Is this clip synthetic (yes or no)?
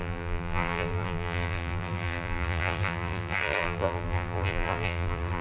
yes